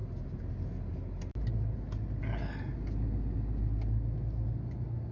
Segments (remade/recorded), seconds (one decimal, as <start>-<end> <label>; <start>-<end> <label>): 0.0-5.1 recorded